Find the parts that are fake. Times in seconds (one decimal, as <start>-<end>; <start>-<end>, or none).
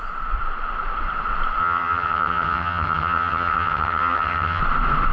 1.6-4.6